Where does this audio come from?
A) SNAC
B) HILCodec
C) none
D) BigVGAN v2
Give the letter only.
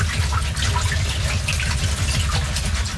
C